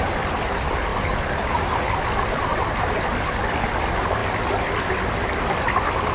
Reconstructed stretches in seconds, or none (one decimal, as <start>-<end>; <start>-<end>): 0.9-1.8; 2.5-3.0